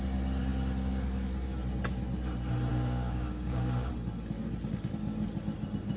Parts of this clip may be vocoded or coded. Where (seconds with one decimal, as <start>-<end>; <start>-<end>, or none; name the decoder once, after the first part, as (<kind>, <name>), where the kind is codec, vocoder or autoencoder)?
2.7-3.9 (codec, DAC)